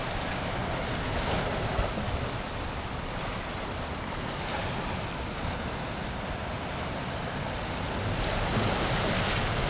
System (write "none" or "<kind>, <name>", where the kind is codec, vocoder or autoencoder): none